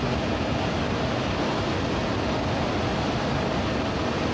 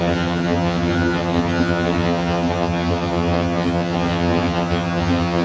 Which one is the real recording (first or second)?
first